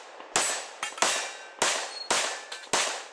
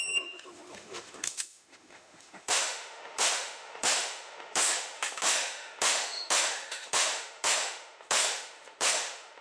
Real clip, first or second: first